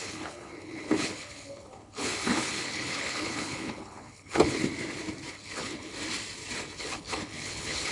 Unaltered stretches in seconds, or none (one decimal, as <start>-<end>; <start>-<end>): 4.6-5.3; 5.9-6.8